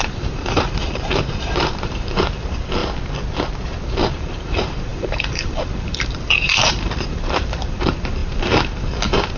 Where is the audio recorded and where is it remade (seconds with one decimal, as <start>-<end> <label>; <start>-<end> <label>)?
0.0-2.8 remade; 2.8-4.1 recorded; 4.1-9.4 remade